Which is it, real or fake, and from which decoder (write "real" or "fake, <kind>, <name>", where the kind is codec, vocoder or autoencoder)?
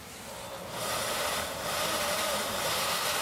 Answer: fake, vocoder, BigVGAN v2